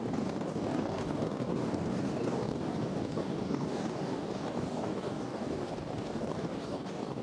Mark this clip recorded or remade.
remade